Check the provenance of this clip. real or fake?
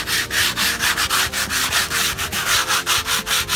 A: real